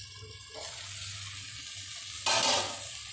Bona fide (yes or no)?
yes